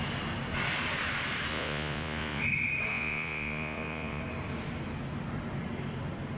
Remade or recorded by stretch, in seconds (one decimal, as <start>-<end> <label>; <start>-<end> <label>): 0.0-1.5 recorded; 1.5-2.4 remade; 2.4-2.9 recorded; 2.9-4.2 remade; 4.2-6.4 recorded